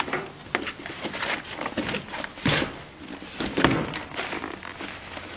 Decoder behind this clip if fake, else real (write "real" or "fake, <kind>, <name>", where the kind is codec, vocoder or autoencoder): real